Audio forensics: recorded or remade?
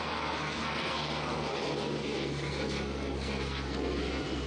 remade